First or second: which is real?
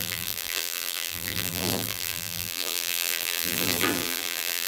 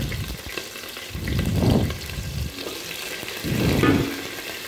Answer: second